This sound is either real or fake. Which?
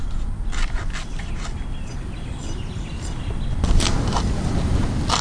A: real